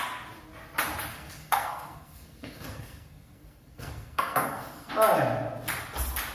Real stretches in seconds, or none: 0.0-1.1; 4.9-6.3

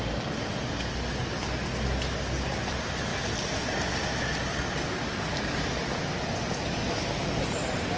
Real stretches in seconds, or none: 0.0-8.0

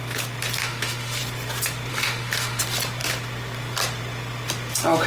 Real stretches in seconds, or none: 0.0-0.6; 1.2-1.9; 2.6-5.1